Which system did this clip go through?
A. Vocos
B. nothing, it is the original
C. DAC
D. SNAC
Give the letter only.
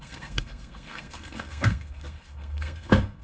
D